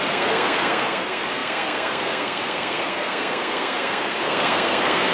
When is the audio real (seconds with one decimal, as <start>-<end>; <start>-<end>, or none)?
none